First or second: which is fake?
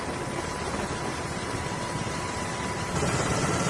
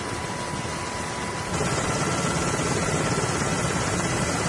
first